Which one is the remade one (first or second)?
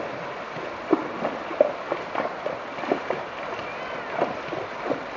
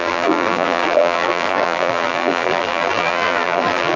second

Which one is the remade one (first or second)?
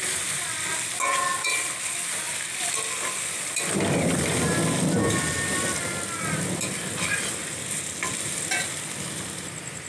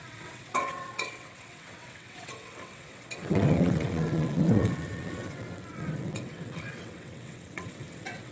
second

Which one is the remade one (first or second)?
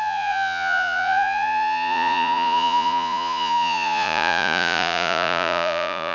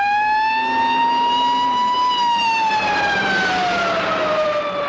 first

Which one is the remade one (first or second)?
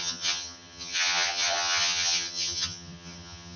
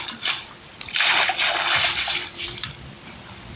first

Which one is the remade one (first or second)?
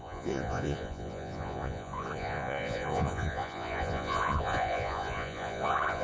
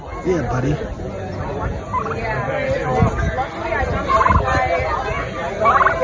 first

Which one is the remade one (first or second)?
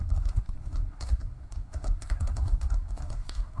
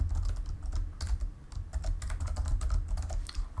first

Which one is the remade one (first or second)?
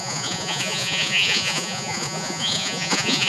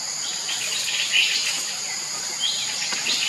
first